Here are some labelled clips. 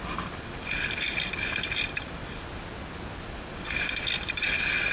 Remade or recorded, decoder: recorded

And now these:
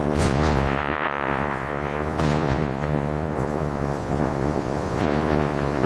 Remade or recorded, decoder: remade, vocoder, Vocos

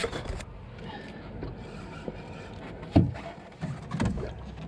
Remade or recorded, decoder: recorded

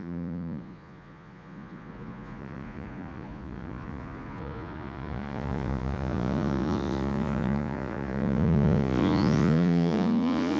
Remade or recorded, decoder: remade, vocoder, Vocos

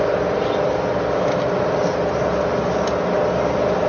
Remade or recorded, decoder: recorded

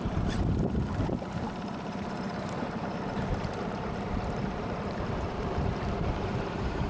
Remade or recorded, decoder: remade, vocoder, BigVGAN v2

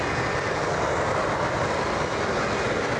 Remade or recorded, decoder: recorded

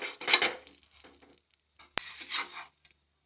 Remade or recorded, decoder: recorded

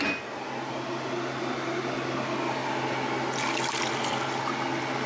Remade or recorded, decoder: recorded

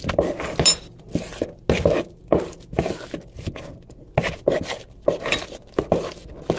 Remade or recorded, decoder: recorded